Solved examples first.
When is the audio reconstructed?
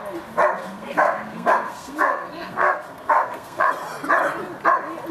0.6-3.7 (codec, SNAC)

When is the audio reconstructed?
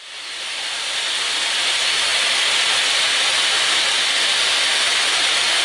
none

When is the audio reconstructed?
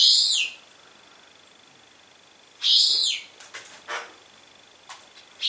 none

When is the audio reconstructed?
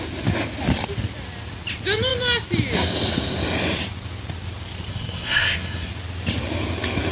4.9-5.9 (codec, SNAC)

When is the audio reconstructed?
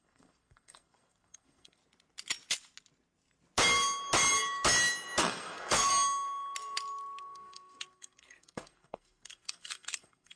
0.0-1.8 (codec, SNAC); 5.2-5.9; 7.2-10.4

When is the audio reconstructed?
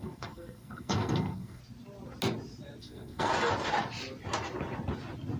0.0-1.6 (codec, SNAC); 2.8-3.3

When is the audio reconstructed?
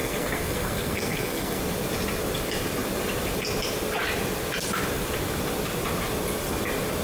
0.0-1.6 (codec, SNAC)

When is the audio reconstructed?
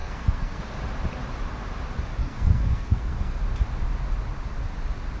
0.0-0.6 (codec, SNAC); 2.2-3.4